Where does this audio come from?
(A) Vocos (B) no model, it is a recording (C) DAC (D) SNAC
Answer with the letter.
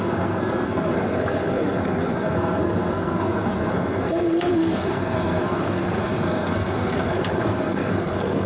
D